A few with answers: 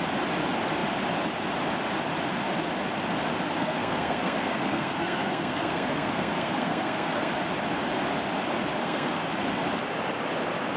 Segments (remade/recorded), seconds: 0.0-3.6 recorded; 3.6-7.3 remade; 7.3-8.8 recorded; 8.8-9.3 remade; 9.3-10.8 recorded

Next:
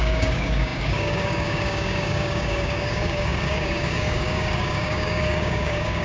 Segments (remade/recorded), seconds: 0.0-6.0 remade

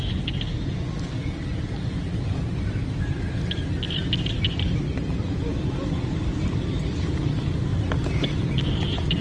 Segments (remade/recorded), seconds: 0.0-5.5 recorded; 5.5-6.9 remade; 6.9-9.2 recorded

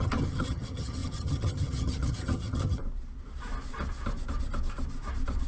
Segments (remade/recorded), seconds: 0.0-2.8 remade; 2.8-5.5 recorded

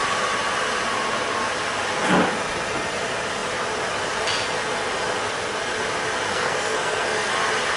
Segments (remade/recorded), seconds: 0.0-6.3 recorded; 6.3-7.3 remade; 7.3-7.8 recorded